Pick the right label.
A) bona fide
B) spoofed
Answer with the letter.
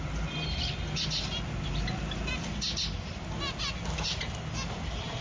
A